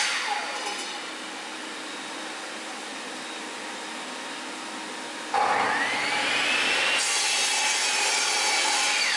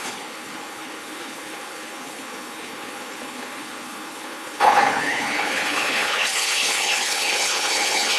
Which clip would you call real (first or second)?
first